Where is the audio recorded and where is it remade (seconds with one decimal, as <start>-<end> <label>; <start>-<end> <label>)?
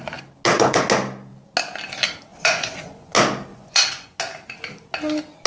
0.0-2.3 recorded; 2.3-3.1 remade; 3.1-3.5 recorded; 3.5-4.2 remade; 4.2-5.5 recorded